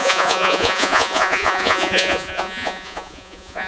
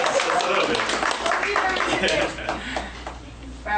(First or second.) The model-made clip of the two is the first